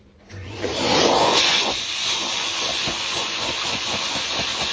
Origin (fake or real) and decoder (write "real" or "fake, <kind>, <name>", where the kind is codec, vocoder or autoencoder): fake, vocoder, Vocos